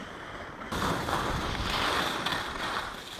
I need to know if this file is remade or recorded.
recorded